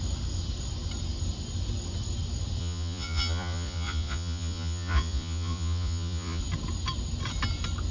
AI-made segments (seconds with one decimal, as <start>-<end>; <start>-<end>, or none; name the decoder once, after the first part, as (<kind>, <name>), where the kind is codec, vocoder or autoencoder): 2.6-6.4 (vocoder, Vocos)